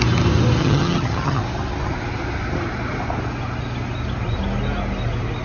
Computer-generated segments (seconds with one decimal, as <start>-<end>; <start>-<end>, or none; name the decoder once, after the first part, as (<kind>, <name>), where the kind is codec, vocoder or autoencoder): 0.6-1.4 (vocoder, HiFi-GAN)